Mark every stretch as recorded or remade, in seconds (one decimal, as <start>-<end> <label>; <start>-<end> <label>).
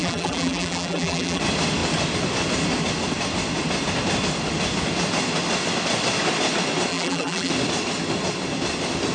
0.0-1.4 remade; 1.4-6.9 recorded; 6.9-7.5 remade; 7.5-9.1 recorded